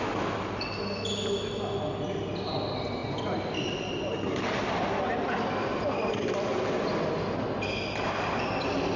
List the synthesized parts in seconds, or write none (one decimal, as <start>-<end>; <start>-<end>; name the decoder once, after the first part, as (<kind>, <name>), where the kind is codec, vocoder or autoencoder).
none